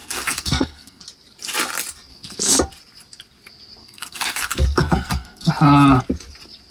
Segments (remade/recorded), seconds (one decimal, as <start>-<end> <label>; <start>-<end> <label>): 0.0-1.0 remade; 1.0-2.1 recorded; 2.1-2.6 remade; 2.6-3.8 recorded; 3.8-5.5 remade; 5.5-6.7 recorded